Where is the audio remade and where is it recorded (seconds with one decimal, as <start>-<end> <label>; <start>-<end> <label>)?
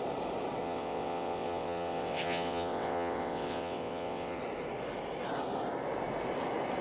0.0-0.6 recorded; 0.6-4.4 remade; 4.4-6.8 recorded